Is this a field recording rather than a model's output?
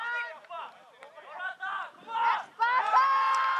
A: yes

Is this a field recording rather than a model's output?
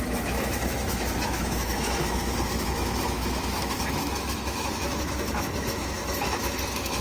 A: no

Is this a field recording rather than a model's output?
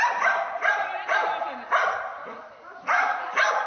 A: yes